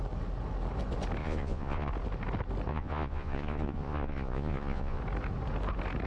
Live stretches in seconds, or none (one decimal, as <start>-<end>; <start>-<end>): 0.0-1.2; 1.9-2.7; 5.0-6.1